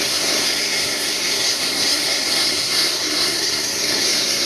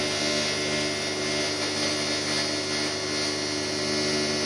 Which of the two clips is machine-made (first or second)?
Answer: first